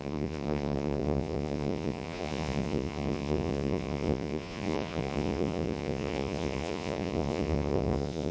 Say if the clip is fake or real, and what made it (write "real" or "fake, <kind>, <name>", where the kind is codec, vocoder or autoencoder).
fake, vocoder, Vocos